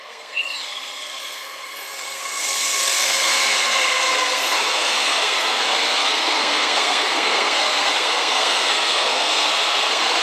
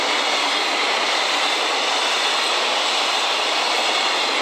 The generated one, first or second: first